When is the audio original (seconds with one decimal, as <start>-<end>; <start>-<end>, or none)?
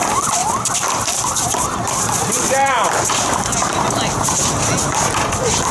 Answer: 0.0-0.4; 3.1-5.7